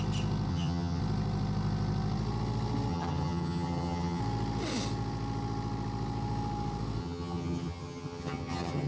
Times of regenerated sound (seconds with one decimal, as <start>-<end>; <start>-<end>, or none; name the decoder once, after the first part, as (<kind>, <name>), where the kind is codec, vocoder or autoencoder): 0.5-1.0 (vocoder, HiFi-GAN); 2.9-4.2; 7.0-8.9